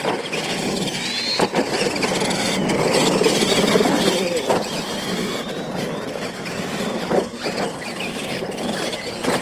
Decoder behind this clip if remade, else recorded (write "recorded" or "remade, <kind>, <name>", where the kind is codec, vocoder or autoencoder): recorded